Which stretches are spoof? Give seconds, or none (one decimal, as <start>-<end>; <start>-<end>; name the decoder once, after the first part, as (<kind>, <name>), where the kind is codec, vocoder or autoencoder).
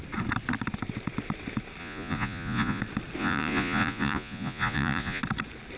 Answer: 1.8-2.8 (vocoder, Vocos); 3.2-5.2